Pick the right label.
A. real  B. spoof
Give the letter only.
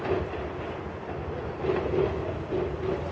A